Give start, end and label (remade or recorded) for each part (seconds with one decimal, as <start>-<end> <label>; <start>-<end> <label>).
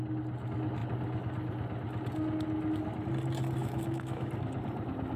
0.0-3.6 recorded; 3.6-4.3 remade; 4.3-5.2 recorded